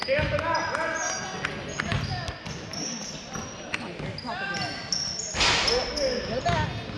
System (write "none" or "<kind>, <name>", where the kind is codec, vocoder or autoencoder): none